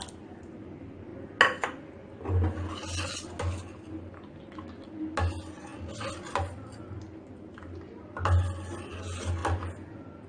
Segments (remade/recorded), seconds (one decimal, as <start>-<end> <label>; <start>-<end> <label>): 0.0-10.3 recorded